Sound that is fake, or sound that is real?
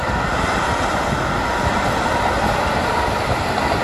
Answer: real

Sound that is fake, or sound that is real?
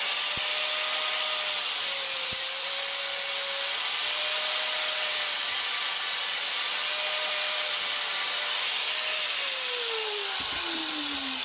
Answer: fake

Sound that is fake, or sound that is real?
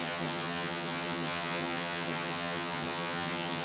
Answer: fake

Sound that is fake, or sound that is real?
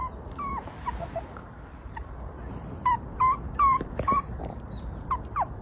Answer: fake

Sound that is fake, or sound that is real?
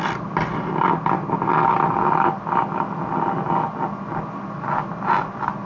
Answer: real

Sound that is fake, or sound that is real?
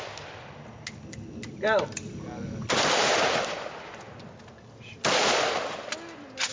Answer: real